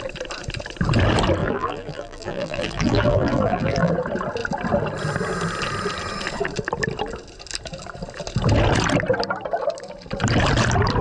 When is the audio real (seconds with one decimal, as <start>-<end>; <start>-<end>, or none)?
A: 0.0-1.4; 3.9-11.0